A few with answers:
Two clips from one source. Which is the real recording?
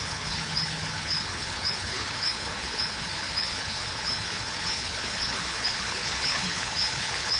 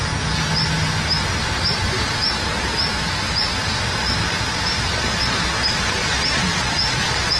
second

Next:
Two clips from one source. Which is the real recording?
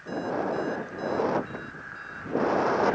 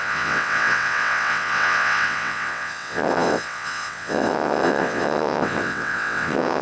first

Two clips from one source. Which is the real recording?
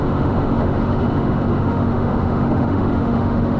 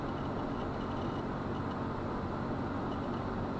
second